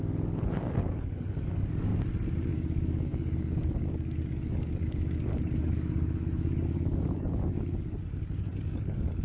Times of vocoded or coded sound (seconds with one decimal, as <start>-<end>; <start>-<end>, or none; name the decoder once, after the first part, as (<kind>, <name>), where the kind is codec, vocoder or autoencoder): 0.0-1.9 (codec, DAC); 2.5-9.2

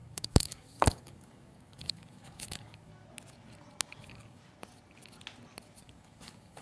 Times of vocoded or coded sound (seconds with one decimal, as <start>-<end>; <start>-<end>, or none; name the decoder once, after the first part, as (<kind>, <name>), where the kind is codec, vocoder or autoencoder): 0.0-2.9 (codec, DAC); 4.0-4.4; 5.8-6.6

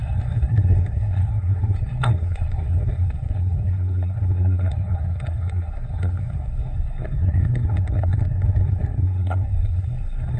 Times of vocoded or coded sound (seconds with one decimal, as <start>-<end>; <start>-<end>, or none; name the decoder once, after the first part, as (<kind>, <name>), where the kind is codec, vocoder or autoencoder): 0.0-10.4 (codec, SNAC)

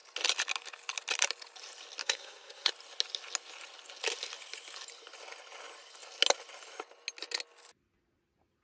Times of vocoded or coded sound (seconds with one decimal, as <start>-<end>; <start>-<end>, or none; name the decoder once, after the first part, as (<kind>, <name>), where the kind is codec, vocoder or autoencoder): 2.0-2.7 (codec, SNAC)

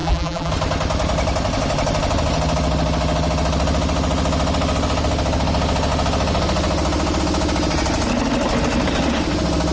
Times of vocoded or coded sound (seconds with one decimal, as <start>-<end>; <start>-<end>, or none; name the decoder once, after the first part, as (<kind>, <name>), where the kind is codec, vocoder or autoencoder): 0.0-0.5 (vocoder, BigVGAN v2)